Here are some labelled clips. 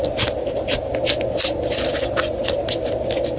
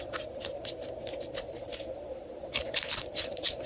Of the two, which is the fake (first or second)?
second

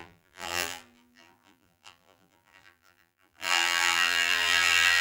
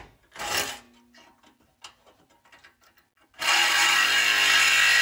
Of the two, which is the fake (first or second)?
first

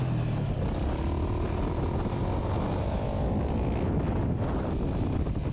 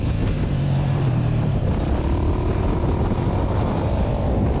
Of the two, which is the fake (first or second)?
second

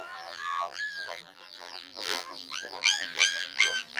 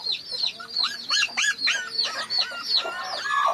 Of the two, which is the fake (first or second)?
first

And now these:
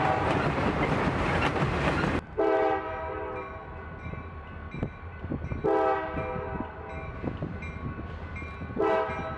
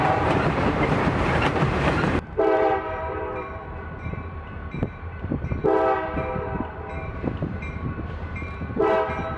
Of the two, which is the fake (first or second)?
second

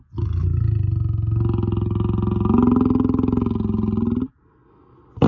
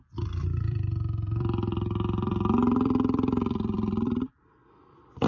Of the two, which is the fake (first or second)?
second